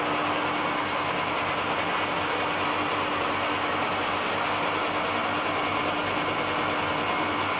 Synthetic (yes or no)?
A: no